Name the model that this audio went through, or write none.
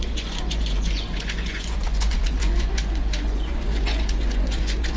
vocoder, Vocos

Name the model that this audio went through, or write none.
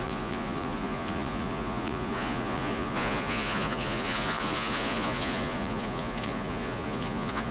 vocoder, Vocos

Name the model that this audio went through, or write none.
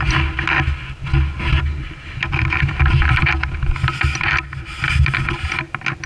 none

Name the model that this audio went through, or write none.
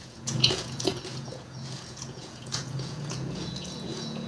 vocoder, Vocos